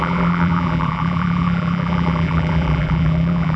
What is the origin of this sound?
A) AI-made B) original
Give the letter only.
A